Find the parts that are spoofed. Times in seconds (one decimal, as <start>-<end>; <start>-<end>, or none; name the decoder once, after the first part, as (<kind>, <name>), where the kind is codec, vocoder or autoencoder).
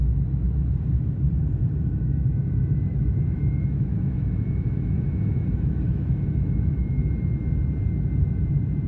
2.9-7.1 (autoencoder, DAC-VAE)